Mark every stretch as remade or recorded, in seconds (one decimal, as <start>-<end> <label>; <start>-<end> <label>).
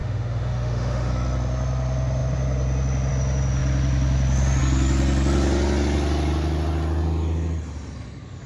0.0-1.1 remade; 1.1-8.5 recorded